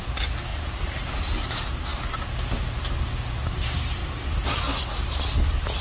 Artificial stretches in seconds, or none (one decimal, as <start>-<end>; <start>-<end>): none